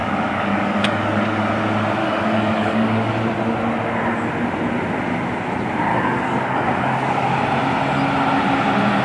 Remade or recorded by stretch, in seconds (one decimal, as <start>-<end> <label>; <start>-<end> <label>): 0.0-1.5 remade; 1.5-2.0 recorded; 2.0-3.1 remade; 3.1-5.9 recorded; 5.9-7.3 remade; 7.3-9.0 recorded